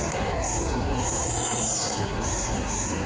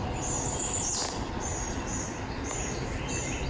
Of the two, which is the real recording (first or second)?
second